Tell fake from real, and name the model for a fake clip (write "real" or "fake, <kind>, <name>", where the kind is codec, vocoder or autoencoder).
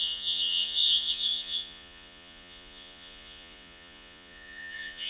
fake, vocoder, Vocos